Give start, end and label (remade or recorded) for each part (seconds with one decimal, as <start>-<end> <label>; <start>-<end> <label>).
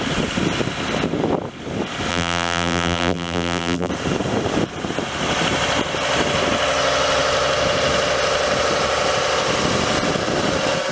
0.0-2.1 recorded; 2.1-3.9 remade; 3.9-10.9 recorded